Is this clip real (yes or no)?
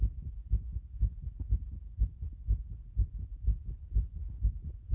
yes